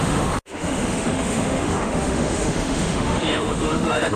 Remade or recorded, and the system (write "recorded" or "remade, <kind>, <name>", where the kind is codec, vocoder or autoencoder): remade, autoencoder, DAC-VAE